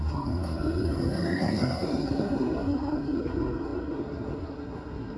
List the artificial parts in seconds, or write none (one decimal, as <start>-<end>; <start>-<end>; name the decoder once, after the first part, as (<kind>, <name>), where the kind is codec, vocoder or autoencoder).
0.0-5.2 (codec, SNAC)